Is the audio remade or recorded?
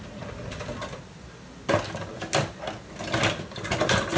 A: recorded